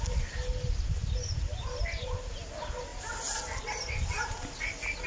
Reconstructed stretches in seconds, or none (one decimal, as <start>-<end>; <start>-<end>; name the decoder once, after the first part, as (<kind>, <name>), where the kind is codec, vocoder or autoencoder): none